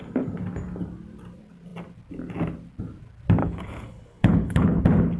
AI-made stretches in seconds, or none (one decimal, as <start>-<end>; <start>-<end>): 3.4-4.8